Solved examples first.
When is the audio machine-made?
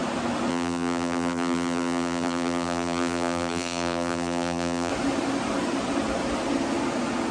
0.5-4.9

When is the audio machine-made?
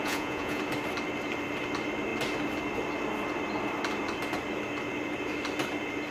0.0-0.6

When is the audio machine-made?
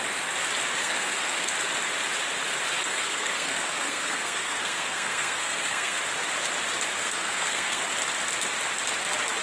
0.8-1.5; 2.8-6.0; 7.0-7.9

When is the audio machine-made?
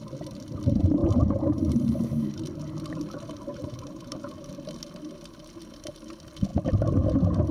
3.5-4.5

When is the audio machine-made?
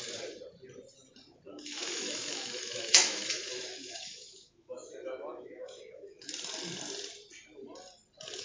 1.5-6.3